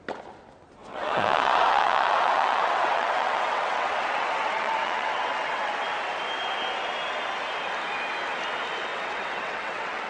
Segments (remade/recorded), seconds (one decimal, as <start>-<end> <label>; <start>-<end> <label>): 0.0-0.9 recorded; 0.9-5.7 remade; 5.7-8.9 recorded; 8.9-10.1 remade